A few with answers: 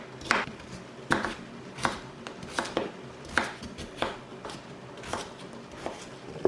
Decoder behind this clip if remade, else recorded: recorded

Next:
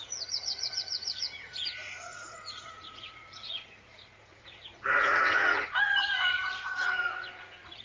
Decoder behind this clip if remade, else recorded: remade, vocoder, Vocos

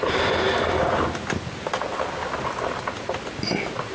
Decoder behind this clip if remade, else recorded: recorded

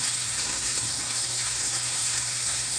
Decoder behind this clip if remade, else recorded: remade, codec, SNAC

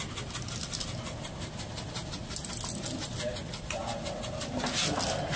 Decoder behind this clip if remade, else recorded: recorded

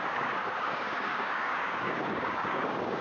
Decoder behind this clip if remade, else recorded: remade, codec, DAC